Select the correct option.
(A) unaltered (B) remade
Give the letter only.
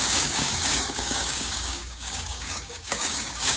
B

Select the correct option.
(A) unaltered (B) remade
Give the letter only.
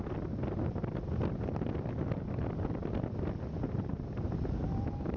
A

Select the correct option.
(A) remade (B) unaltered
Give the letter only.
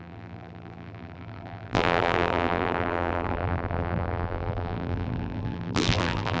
A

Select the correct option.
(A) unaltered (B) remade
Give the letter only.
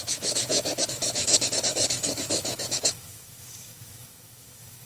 B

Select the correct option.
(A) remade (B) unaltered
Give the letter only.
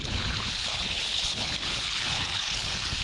A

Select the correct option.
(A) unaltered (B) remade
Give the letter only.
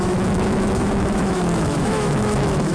B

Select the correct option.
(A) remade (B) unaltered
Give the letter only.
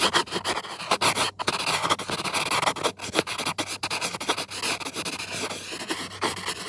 B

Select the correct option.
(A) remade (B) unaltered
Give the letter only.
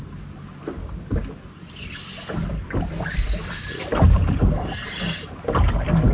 B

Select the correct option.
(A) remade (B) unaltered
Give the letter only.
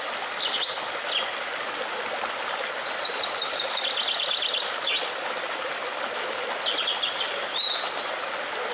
B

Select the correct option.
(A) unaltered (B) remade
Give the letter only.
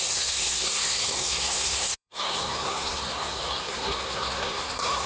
B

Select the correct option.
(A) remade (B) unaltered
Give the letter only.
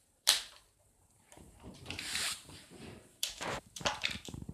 A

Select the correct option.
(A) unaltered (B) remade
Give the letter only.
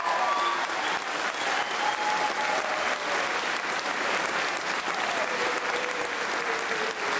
A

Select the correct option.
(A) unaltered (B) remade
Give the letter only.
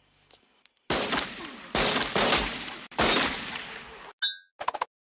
A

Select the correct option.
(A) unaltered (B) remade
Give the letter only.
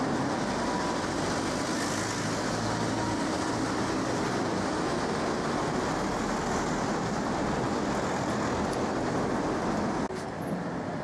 A